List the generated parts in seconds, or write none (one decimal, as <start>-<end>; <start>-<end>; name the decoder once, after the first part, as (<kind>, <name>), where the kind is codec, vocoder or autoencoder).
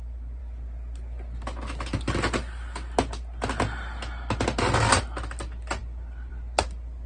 none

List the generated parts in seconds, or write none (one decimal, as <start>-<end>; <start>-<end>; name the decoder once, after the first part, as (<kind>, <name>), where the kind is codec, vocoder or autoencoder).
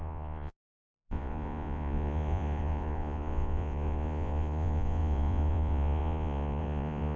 0.0-7.2 (vocoder, Vocos)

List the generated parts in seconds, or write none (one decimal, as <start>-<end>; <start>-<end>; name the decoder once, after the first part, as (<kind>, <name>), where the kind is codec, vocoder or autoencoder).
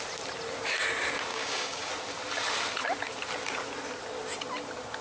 1.3-1.9 (codec, DAC)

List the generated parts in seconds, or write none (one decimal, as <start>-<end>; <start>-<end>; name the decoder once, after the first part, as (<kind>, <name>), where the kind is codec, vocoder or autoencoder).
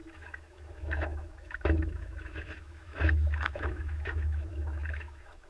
0.0-5.5 (autoencoder, DAC-VAE)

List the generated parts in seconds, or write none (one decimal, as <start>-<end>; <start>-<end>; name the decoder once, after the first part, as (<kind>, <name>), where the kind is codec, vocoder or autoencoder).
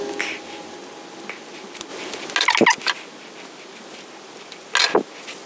none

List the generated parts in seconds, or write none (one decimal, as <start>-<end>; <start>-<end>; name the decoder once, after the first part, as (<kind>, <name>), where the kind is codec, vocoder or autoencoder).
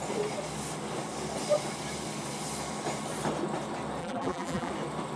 4.0-4.7 (vocoder, BigVGAN v2)